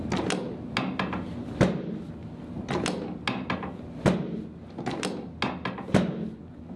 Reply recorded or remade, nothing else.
recorded